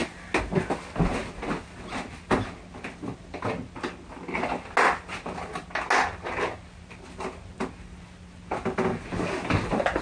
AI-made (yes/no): no